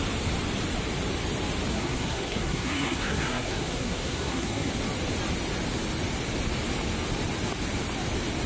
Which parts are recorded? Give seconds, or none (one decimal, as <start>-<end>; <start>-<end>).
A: 0.0-1.7; 4.7-8.5